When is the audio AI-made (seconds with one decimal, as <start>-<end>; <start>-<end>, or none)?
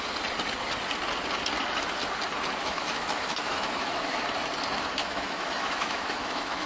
2.6-4.2; 5.0-6.7